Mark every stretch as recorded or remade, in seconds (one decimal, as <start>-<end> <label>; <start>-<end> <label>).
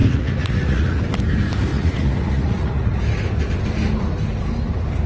0.0-1.0 remade; 1.0-1.7 recorded; 1.7-3.0 remade; 3.0-5.1 recorded